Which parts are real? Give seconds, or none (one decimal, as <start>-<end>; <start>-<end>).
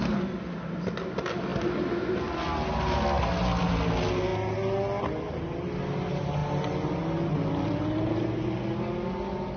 0.0-9.6